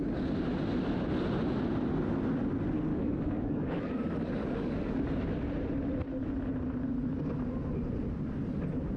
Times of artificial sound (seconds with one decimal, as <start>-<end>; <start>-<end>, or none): 2.9-3.9; 4.4-4.9